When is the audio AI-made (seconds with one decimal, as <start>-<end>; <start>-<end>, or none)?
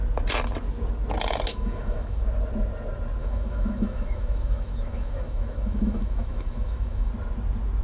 1.5-2.2; 3.2-7.1